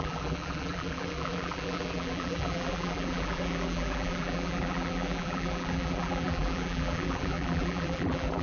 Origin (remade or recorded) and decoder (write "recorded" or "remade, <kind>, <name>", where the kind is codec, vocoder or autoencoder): remade, vocoder, BigVGAN v2